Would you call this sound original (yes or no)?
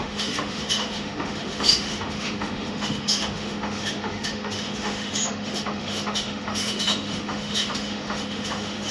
no